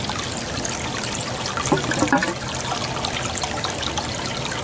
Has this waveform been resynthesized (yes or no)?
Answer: no